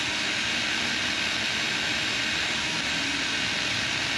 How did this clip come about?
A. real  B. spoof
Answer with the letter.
A